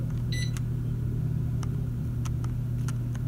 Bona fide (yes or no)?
yes